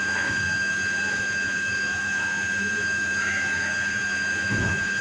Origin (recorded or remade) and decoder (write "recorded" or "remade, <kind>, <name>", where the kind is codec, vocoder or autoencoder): remade, autoencoder, DAC-VAE